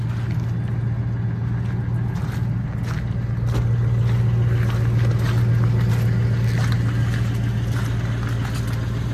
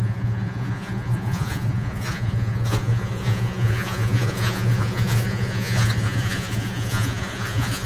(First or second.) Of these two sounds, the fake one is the second